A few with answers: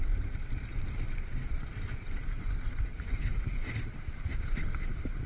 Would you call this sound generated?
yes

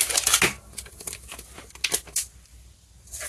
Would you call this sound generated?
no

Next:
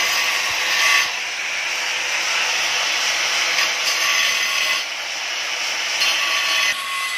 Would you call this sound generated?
no